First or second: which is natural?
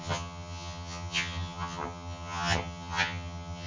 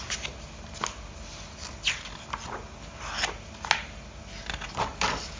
second